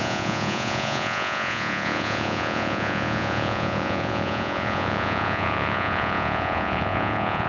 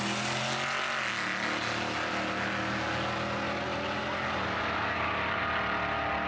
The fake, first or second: first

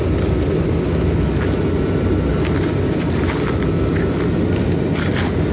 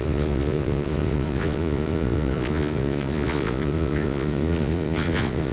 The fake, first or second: second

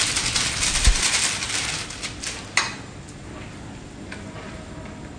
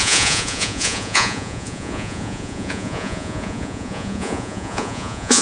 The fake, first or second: second